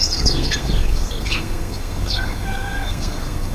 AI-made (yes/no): yes